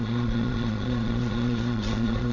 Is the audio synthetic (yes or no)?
yes